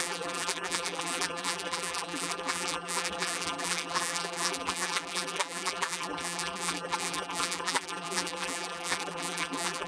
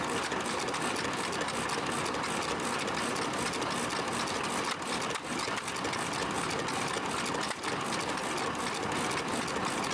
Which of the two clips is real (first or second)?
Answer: second